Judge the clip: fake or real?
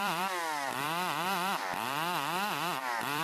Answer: fake